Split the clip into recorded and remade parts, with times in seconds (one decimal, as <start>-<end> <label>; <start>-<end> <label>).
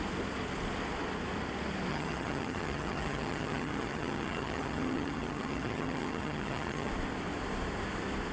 0.0-1.9 recorded; 1.9-6.9 remade; 6.9-8.3 recorded